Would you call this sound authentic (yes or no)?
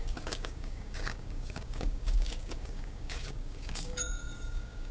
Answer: no